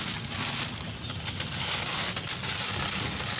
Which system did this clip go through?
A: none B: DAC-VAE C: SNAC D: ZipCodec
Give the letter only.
A